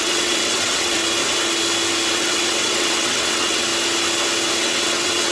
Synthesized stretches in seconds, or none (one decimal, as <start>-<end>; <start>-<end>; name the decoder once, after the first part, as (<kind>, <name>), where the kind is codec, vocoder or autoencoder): 0.0-1.0 (vocoder, WaveNeXt); 2.1-3.7; 4.6-5.3